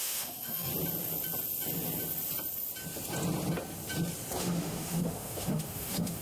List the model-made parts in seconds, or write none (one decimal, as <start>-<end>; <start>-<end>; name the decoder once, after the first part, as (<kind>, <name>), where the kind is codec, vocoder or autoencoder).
0.0-0.7 (autoencoder, DAC-VAE); 4.4-6.2